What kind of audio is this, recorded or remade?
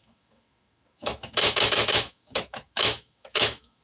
remade